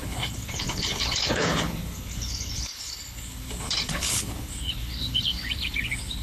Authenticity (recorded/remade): remade